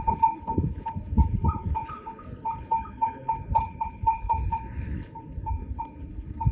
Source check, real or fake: fake